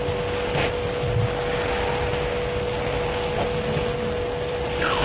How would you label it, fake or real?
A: real